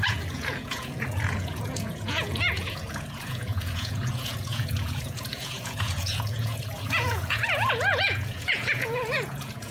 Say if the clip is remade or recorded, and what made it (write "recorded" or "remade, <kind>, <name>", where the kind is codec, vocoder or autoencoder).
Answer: remade, vocoder, Vocos